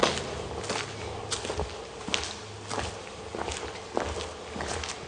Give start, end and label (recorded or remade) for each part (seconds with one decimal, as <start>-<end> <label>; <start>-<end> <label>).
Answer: 0.0-5.1 recorded